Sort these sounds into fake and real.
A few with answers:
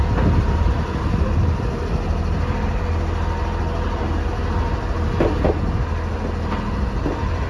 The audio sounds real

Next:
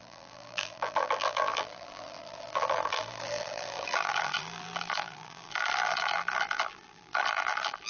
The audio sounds fake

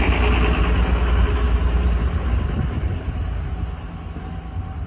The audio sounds real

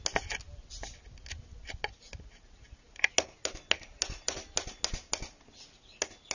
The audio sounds real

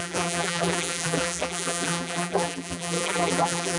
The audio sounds fake